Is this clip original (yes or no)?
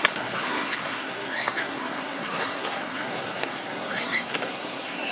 no